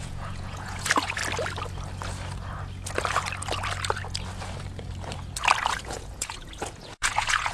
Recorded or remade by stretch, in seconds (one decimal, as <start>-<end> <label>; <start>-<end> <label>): 0.0-1.2 remade; 1.2-5.7 recorded; 5.7-7.5 remade